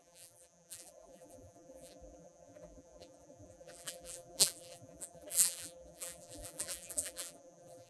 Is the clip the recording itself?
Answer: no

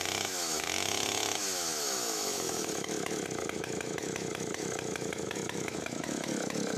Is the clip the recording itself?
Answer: no